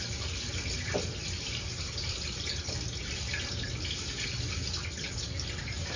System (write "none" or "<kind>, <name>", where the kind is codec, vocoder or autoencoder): none